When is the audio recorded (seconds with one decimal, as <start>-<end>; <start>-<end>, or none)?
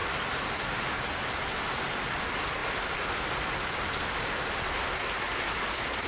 0.0-6.1